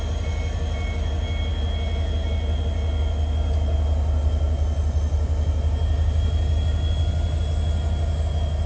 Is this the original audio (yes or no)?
yes